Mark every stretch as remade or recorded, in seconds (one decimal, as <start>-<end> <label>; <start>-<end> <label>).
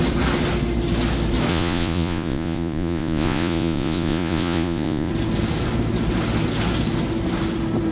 0.0-1.5 recorded; 1.5-5.1 remade; 5.1-7.9 recorded